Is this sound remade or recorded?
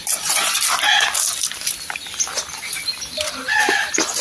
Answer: recorded